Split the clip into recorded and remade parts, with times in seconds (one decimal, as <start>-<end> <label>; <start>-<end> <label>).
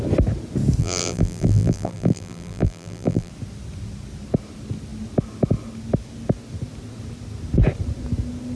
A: 0.0-0.8 recorded; 0.8-3.3 remade; 3.3-8.6 recorded